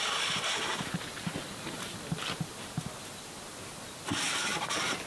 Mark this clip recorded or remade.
recorded